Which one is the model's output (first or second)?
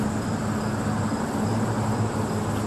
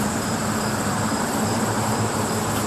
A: second